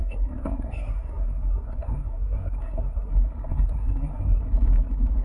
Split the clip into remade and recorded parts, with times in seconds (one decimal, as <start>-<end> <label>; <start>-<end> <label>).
0.0-3.1 remade; 3.1-3.5 recorded; 3.5-4.4 remade; 4.4-5.2 recorded